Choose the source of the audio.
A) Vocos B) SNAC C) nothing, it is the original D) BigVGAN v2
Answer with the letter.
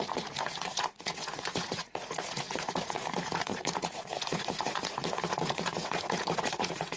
A